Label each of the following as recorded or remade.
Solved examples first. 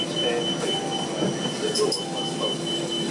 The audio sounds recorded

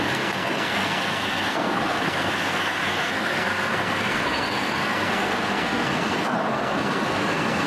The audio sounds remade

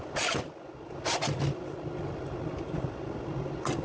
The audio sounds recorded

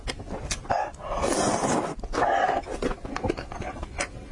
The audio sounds recorded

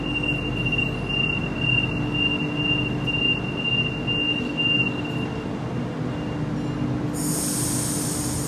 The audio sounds recorded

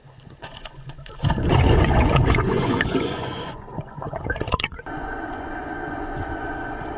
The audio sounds remade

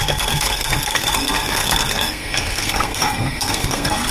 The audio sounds remade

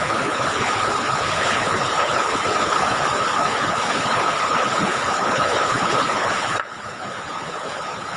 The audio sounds remade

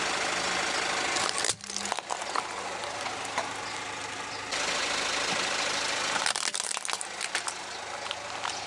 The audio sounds recorded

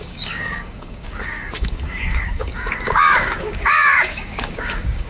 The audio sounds remade